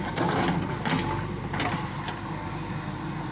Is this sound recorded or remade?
recorded